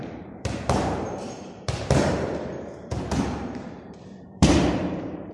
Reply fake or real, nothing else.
fake